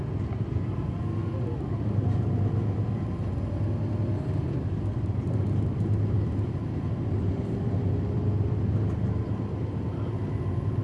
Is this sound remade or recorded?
recorded